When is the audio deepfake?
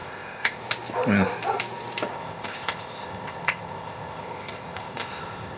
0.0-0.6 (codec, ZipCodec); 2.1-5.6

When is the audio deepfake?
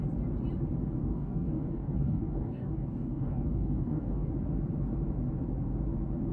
1.0-4.3 (codec, DAC)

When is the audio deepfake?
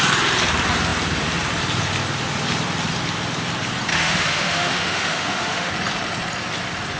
3.9-5.7 (autoencoder, DAC-VAE)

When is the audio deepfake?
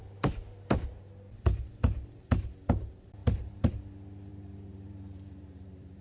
3.2-3.7 (vocoder, BigVGAN v2); 4.3-6.0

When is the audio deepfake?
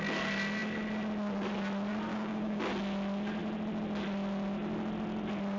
2.1-2.6 (codec, DAC)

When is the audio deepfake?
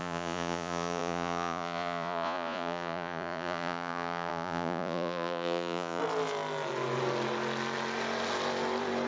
0.0-6.0 (vocoder, Vocos)